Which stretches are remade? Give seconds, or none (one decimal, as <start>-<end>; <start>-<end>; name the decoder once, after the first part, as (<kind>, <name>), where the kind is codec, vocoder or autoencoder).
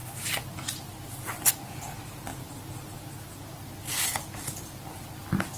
none